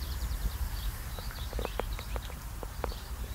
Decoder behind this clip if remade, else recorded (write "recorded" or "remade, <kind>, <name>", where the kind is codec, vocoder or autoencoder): remade, vocoder, BigVGAN v2